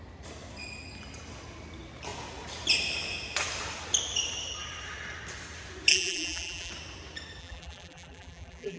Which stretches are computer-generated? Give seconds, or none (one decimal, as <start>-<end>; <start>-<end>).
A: 5.9-6.7; 7.4-8.8